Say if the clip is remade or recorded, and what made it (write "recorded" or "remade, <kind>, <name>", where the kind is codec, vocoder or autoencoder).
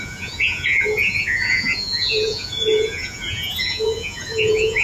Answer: remade, vocoder, Vocos